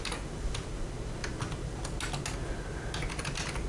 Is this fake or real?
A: real